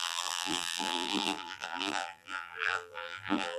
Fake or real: fake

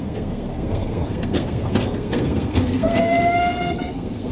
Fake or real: fake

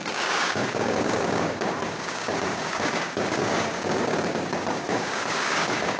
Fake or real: fake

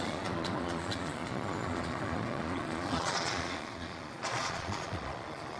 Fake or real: fake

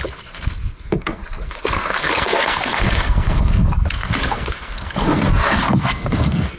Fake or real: fake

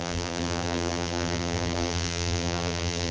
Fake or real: fake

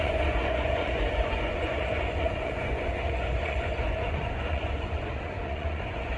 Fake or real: fake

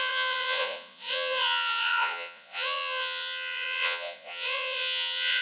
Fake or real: fake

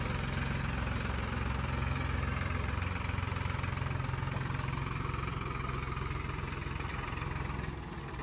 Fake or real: real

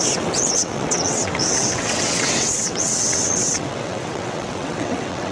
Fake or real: fake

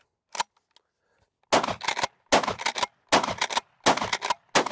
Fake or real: real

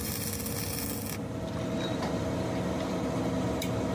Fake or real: real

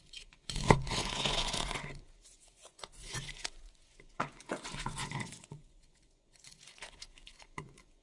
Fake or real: fake